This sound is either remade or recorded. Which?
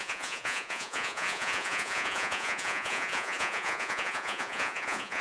remade